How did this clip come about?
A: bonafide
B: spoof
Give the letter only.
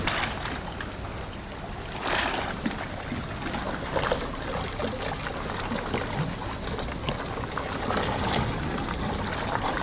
A